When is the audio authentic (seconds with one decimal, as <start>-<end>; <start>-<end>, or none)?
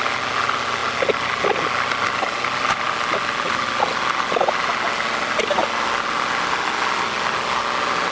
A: 0.0-8.1